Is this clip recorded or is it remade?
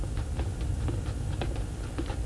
remade